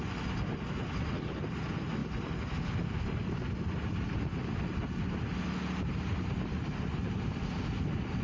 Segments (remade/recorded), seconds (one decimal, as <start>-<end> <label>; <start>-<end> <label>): 0.0-8.2 recorded